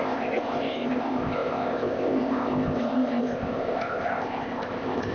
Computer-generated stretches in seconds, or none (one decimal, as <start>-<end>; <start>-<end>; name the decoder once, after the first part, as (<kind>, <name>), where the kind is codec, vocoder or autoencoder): 0.0-5.1 (codec, ZipCodec)